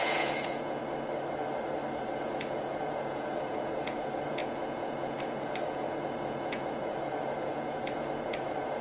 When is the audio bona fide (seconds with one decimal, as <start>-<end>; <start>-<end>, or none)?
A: 0.8-2.0